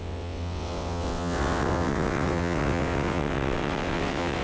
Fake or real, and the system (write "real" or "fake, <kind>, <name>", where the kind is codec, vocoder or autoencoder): fake, vocoder, WaveNeXt